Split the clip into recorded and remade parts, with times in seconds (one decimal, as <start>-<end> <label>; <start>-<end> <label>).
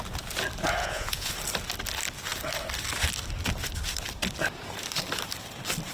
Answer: 0.0-0.8 recorded; 0.8-1.3 remade; 1.3-5.9 recorded